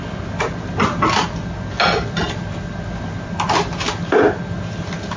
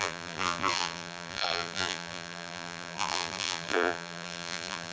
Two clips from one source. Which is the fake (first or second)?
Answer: second